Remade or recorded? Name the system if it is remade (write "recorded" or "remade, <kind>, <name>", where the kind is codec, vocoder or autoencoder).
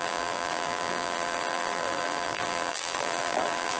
remade, vocoder, BigVGAN v2